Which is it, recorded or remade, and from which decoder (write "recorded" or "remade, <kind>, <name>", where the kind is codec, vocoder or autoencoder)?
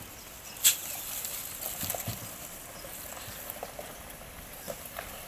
recorded